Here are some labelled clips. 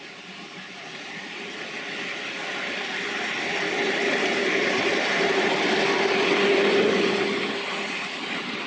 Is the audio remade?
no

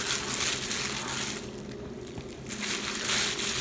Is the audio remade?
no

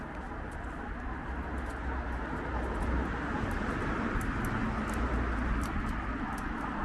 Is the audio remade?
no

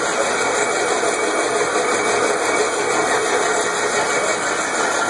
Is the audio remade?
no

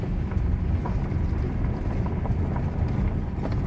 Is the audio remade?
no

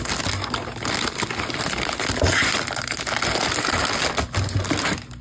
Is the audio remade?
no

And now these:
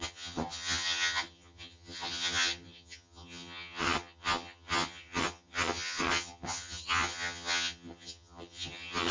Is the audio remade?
yes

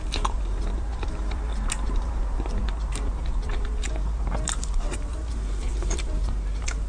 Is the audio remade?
yes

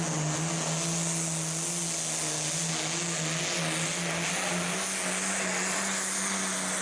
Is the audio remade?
no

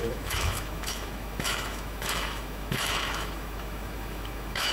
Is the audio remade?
yes